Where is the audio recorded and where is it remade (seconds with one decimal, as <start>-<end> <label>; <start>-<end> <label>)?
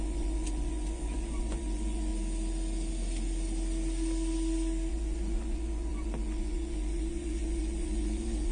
0.0-2.1 remade; 2.1-4.9 recorded; 4.9-8.5 remade